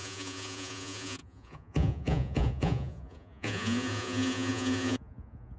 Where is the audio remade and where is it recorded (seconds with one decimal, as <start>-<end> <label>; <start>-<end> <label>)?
0.0-5.6 remade